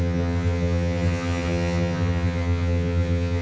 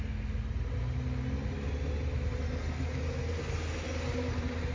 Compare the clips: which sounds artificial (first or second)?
first